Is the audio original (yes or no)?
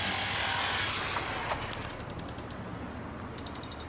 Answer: yes